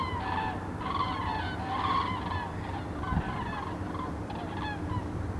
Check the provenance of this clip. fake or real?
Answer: real